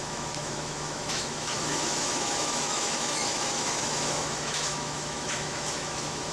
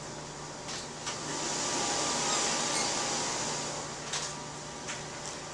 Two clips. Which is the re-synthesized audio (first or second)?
first